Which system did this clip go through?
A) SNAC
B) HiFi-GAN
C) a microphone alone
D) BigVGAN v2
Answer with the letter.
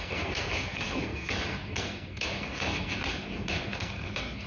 A